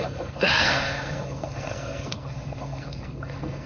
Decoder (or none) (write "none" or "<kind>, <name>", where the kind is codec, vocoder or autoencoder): codec, SNAC